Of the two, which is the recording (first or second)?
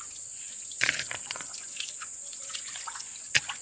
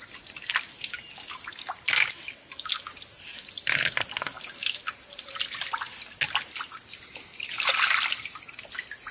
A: second